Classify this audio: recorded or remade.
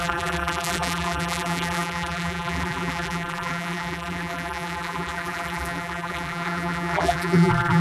remade